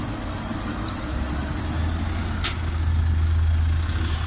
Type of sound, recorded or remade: recorded